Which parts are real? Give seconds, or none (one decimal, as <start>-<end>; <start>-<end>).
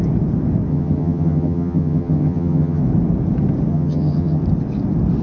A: 0.0-0.7; 2.8-3.7; 4.4-5.2